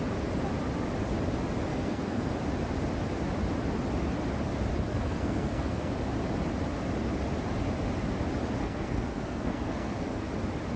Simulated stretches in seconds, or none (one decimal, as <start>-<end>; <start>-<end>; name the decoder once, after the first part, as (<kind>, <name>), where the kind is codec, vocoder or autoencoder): 1.7-2.3 (codec, SNAC); 4.9-5.9; 8.6-10.3